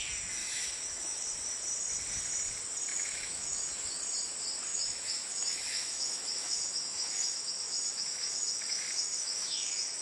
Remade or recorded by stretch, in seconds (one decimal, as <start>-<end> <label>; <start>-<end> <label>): 0.0-0.4 recorded; 0.4-1.2 remade; 1.2-2.9 recorded; 2.9-3.9 remade; 3.9-4.7 recorded; 4.7-10.0 remade